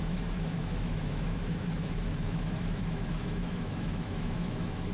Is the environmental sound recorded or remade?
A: remade